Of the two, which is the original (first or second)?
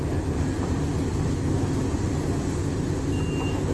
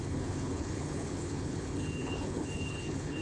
first